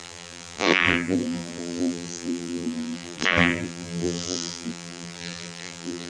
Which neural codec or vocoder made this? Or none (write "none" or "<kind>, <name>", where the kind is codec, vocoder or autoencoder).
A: vocoder, BigVGAN v2